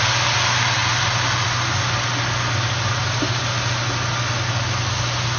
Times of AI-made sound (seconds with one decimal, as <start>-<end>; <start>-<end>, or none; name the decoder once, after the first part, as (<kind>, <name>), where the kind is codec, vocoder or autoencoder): none